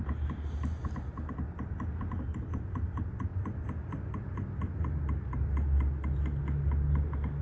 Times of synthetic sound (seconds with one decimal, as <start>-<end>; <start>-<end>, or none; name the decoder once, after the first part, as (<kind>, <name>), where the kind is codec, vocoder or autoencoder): 3.3-4.0 (vocoder, BigVGAN v2)